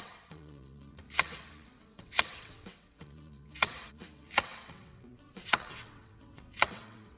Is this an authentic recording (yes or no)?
no